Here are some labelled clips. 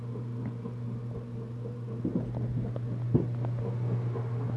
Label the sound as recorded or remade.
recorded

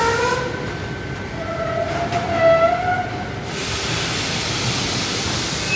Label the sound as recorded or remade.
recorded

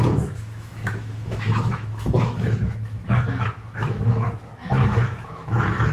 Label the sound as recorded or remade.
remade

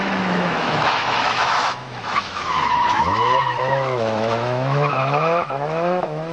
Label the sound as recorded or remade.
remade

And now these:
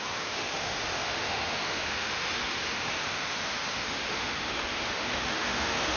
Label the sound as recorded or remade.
remade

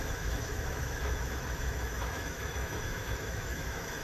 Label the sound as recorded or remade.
remade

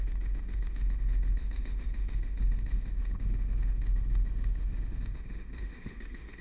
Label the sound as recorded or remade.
remade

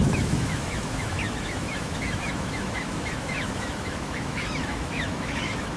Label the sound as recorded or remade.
remade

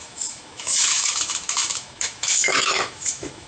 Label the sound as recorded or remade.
remade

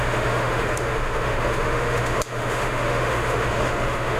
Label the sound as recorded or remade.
remade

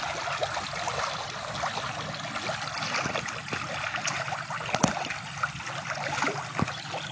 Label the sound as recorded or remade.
recorded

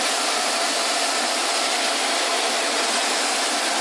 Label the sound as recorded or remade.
recorded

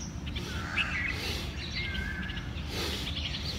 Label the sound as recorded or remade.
recorded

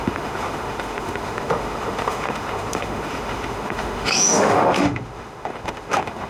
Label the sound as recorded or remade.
remade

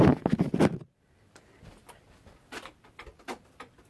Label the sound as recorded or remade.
recorded